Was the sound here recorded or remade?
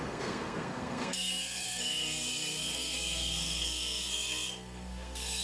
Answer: remade